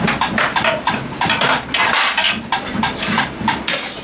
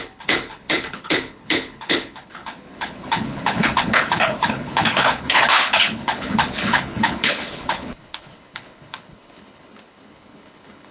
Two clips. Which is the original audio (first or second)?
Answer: first